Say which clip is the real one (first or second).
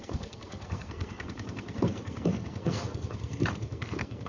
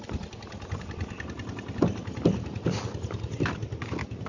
second